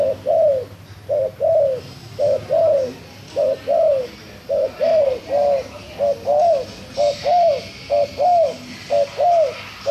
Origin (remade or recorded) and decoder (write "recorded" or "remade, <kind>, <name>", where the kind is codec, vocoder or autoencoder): recorded